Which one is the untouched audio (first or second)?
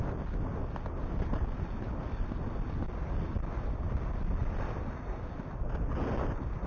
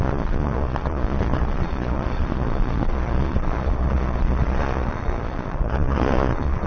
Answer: first